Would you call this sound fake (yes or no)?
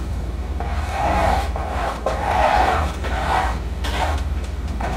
yes